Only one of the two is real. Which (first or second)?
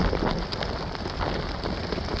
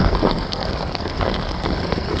first